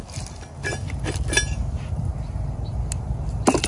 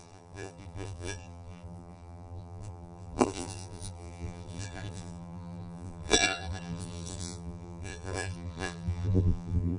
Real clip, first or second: first